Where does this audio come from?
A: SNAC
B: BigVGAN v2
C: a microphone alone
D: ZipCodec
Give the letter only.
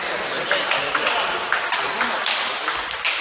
C